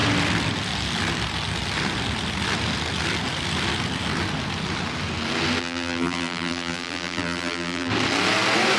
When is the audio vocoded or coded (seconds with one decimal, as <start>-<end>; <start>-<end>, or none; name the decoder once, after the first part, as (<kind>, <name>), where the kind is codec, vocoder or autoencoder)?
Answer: 5.6-7.9 (vocoder, BigVGAN v2)